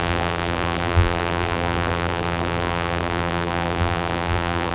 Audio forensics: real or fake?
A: fake